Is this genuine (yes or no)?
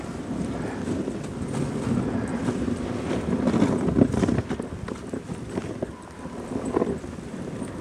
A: yes